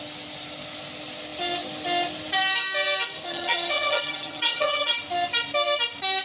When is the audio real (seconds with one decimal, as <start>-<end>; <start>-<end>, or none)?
0.0-3.3; 5.0-6.2